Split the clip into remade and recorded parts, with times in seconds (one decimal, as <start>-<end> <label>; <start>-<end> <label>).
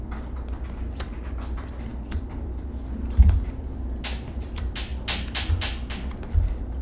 0.0-6.8 recorded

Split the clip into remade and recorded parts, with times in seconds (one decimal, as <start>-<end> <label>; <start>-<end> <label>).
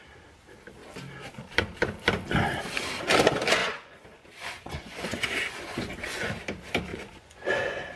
0.0-3.6 recorded; 3.6-6.3 remade; 6.3-6.9 recorded; 6.9-8.0 remade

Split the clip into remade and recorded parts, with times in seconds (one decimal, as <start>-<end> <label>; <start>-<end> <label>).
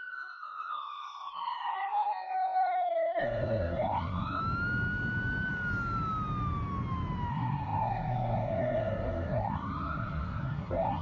0.0-4.4 remade; 4.4-7.3 recorded; 7.3-11.0 remade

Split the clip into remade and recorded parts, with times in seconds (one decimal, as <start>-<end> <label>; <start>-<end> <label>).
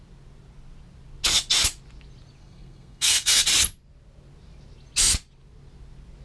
0.0-2.4 recorded; 2.4-3.4 remade; 3.4-6.2 recorded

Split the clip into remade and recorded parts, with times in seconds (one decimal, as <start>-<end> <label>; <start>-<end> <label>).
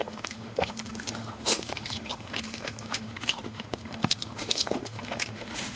0.0-5.8 remade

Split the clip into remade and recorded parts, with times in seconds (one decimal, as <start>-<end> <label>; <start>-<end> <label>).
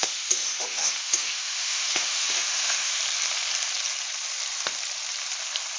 0.0-3.0 remade; 3.0-5.8 recorded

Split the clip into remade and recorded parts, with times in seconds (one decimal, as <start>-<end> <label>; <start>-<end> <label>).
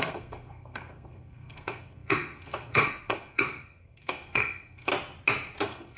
0.0-4.9 remade; 4.9-5.6 recorded; 5.6-6.0 remade